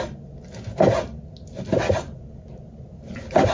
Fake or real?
real